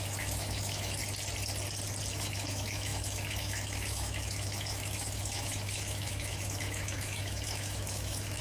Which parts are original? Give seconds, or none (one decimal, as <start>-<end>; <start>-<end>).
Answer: 1.0-2.1